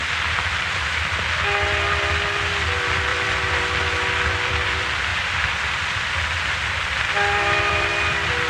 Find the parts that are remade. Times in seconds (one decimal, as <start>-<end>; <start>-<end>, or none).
3.1-3.6; 5.1-7.9